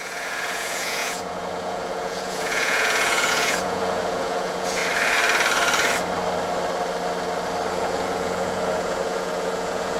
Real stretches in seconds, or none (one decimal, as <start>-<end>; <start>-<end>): 4.8-7.7